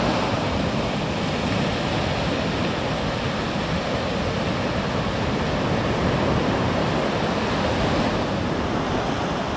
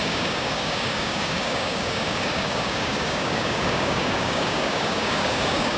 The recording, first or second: first